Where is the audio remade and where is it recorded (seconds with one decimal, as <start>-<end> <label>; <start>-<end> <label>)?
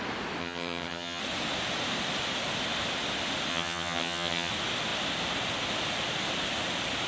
0.0-0.4 recorded; 0.4-1.2 remade; 1.2-3.5 recorded; 3.5-4.5 remade; 4.5-7.1 recorded